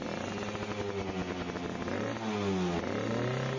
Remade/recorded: recorded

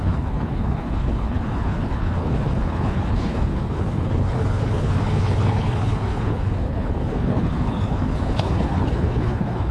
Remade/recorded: remade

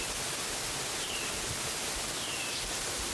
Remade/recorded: recorded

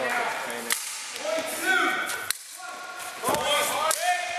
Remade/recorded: recorded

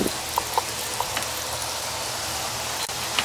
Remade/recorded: recorded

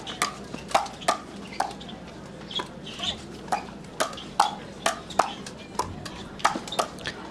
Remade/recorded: recorded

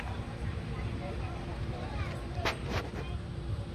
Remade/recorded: remade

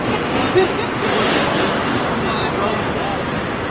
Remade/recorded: recorded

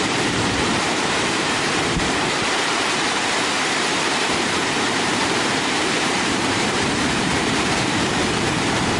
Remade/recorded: remade